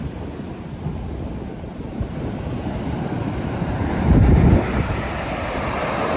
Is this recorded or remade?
recorded